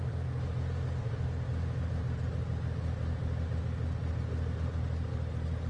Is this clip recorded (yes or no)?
yes